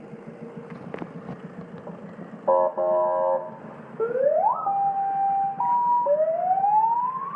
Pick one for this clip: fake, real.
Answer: real